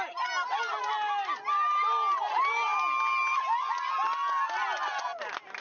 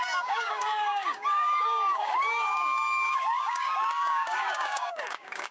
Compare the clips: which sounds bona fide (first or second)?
first